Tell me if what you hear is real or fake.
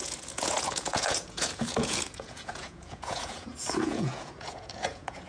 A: fake